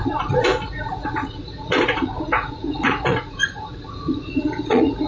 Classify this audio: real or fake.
fake